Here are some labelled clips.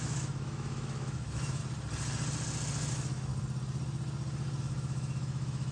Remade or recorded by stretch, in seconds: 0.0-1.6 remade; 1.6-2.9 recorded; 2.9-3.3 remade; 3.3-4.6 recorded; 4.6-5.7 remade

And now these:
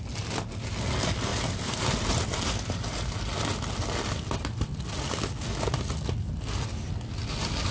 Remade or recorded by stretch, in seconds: 0.0-7.7 recorded

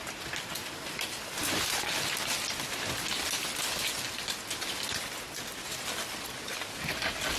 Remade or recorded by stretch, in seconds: 0.0-7.4 recorded

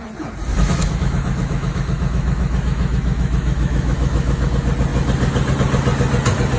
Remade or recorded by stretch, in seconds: 0.0-0.5 recorded; 0.5-4.5 remade; 4.5-6.6 recorded

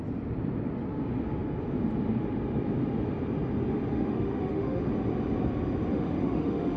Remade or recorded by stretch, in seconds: 0.0-3.9 recorded; 3.9-4.9 remade; 4.9-5.9 recorded; 5.9-6.8 remade

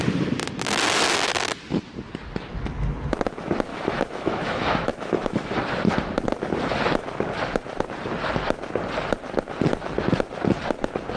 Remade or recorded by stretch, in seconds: 0.0-3.7 recorded; 3.7-5.6 remade; 5.6-11.2 recorded